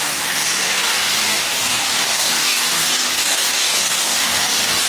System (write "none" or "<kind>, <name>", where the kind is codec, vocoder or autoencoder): codec, DAC